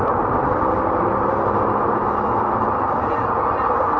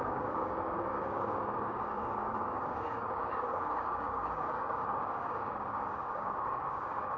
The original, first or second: first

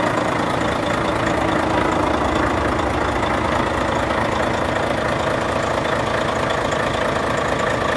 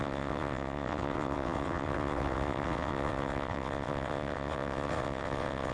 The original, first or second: first